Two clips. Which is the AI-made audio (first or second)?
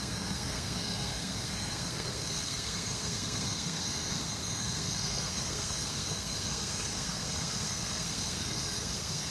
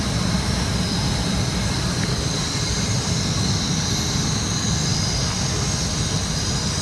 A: first